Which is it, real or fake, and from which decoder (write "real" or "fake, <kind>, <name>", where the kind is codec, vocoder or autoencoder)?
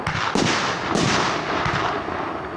real